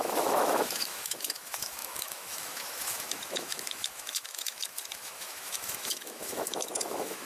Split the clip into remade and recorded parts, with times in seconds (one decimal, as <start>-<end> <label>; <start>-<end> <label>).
0.0-7.3 remade